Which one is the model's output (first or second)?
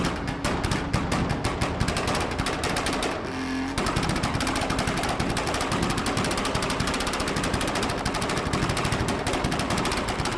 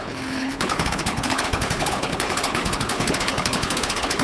second